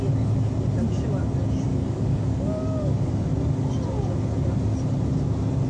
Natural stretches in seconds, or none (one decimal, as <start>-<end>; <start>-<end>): 0.0-1.7; 3.1-5.7